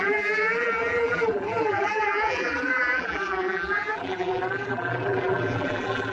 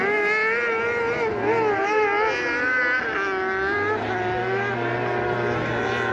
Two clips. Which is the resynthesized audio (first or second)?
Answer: first